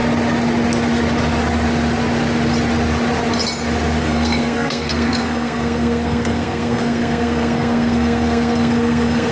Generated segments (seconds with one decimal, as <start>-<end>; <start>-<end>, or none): 4.0-9.3